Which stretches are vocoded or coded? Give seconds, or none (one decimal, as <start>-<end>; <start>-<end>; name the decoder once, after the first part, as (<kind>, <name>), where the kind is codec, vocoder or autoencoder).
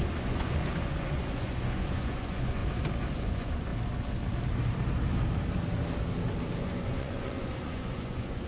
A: 0.0-2.6 (vocoder, Vocos); 3.1-3.7; 6.6-8.5